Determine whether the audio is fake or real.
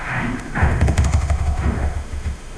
fake